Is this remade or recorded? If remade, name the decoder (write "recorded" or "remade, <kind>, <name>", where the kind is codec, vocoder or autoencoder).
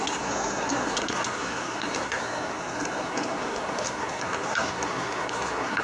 remade, codec, SNAC